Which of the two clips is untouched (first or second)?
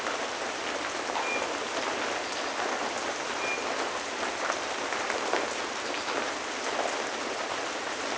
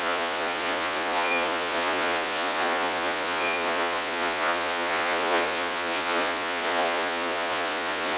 first